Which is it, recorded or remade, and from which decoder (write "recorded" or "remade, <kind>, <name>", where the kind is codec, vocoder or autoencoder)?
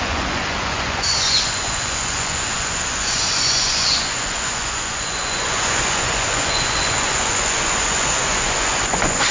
remade, vocoder, Vocos